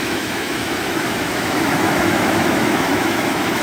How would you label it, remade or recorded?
remade